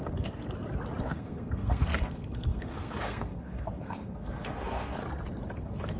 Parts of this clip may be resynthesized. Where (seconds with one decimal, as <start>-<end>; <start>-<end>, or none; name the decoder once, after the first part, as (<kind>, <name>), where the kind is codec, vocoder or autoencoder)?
0.0-0.4 (codec, SNAC); 1.0-5.0; 5.6-6.0